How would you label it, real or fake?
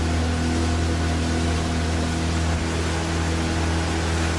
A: real